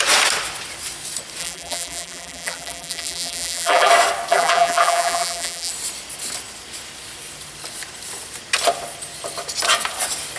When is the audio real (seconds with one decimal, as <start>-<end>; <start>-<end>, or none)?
0.0-1.4; 3.9-4.3; 5.7-10.4